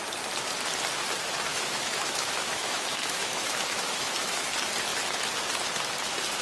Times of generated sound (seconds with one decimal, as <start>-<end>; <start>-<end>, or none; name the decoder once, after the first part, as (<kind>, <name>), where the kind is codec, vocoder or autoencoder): 1.5-4.4 (autoencoder, DAC-VAE)